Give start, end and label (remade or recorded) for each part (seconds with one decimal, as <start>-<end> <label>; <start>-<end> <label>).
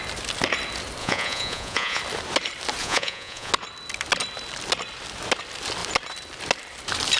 0.0-1.0 recorded; 1.0-2.0 remade; 2.0-2.8 recorded; 2.8-3.5 remade; 3.5-7.2 recorded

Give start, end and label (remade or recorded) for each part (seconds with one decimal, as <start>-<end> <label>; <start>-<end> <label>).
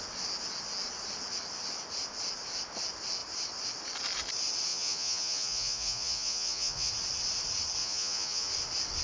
0.0-4.7 recorded; 4.7-6.9 remade; 6.9-7.8 recorded; 7.8-8.5 remade; 8.5-9.0 recorded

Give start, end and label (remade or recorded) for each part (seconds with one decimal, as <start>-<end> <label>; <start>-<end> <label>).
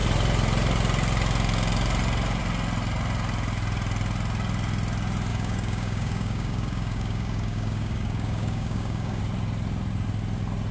0.0-5.3 recorded; 5.3-9.2 remade; 9.2-10.7 recorded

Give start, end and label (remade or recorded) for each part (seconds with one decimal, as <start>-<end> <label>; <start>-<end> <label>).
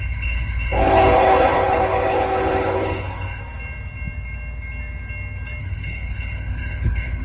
0.0-3.4 remade; 3.4-5.6 recorded; 5.6-7.2 remade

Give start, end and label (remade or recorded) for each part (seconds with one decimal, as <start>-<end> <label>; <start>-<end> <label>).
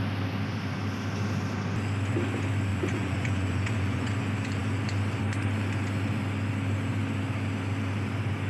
0.0-2.7 recorded; 2.7-4.1 remade; 4.1-8.5 recorded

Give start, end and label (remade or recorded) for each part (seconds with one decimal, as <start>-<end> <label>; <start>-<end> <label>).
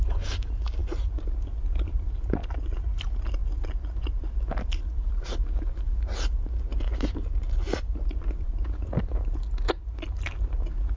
0.0-11.0 recorded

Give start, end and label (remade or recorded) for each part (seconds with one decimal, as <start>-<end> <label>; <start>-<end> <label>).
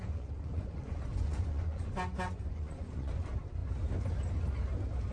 0.0-3.1 remade; 3.1-5.1 recorded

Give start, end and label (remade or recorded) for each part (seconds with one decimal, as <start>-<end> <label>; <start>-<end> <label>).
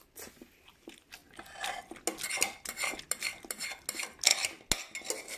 0.0-5.4 recorded